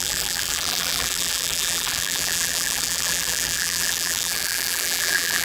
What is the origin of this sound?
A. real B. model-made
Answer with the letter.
B